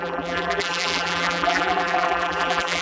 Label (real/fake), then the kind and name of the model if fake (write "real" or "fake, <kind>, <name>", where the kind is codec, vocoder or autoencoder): fake, vocoder, BigVGAN v2